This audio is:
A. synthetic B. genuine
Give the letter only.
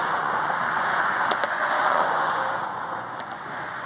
A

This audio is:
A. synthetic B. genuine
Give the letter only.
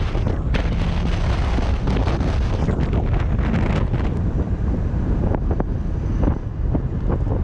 B